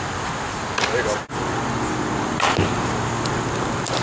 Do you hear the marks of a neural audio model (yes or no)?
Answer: no